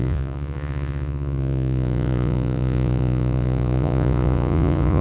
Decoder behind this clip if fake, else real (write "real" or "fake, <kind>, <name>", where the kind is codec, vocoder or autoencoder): fake, vocoder, Vocos